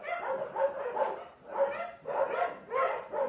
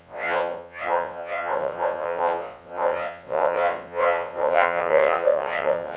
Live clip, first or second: first